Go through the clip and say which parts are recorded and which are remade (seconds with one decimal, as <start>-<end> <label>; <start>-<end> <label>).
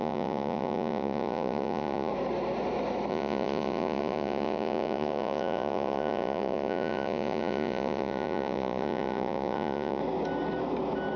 0.0-2.1 remade; 2.1-3.1 recorded; 3.1-10.0 remade; 10.0-11.2 recorded